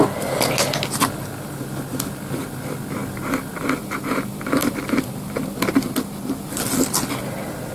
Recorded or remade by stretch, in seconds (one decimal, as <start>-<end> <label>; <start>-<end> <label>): 0.0-3.0 recorded; 3.0-3.6 remade; 3.6-4.6 recorded; 4.6-6.0 remade; 6.0-7.7 recorded